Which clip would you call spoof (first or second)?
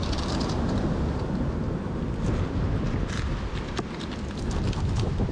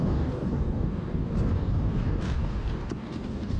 second